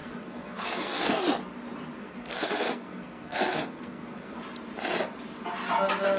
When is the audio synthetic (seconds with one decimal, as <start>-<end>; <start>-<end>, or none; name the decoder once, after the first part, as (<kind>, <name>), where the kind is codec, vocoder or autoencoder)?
0.0-1.2 (codec, SNAC); 2.0-4.4